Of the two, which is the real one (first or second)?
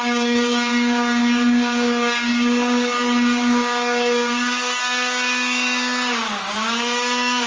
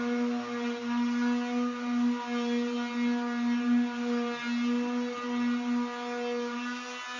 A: second